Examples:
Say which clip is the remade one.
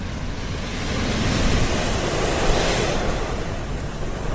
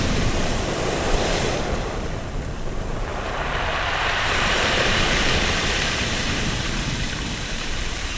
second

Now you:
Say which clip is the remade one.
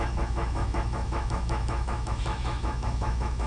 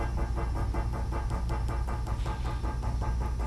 first